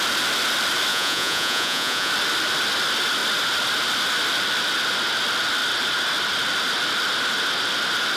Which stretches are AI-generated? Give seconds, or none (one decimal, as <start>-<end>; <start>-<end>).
0.9-2.1